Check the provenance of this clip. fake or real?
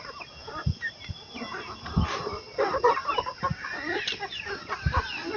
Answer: real